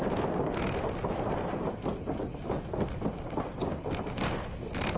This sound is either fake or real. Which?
real